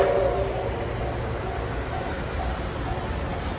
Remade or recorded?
recorded